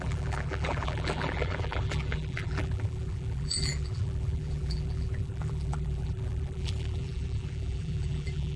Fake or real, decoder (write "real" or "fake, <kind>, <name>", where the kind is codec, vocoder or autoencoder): fake, vocoder, BigVGAN v2